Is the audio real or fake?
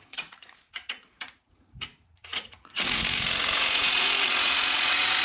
fake